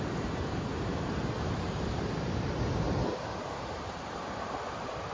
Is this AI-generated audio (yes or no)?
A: yes